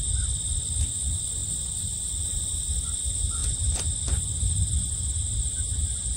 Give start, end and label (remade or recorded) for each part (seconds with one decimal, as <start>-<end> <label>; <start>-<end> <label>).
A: 0.0-6.2 recorded